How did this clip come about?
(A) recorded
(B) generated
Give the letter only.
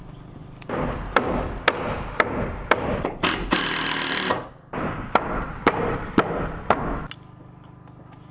A